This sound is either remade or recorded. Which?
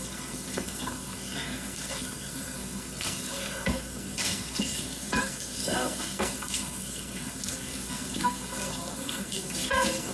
remade